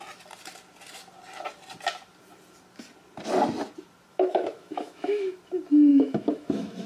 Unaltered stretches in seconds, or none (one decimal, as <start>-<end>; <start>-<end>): 0.0-4.1; 5.4-5.9